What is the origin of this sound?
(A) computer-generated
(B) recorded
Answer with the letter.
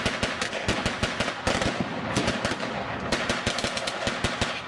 B